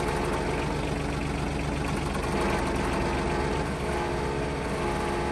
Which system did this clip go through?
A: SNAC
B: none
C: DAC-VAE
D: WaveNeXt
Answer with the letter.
B